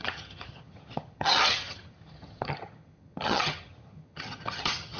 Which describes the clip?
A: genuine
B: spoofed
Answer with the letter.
B